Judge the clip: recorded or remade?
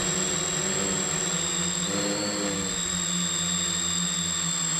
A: recorded